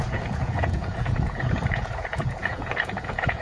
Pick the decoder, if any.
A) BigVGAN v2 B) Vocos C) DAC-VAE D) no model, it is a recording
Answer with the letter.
B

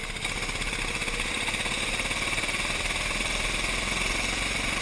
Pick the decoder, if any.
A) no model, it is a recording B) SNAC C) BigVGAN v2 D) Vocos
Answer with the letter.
A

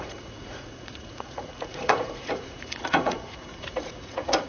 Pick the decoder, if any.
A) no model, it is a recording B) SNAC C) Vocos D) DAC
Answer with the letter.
C